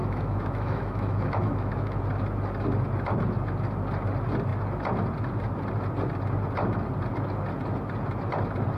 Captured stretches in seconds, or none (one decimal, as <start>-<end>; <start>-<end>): 2.0-8.8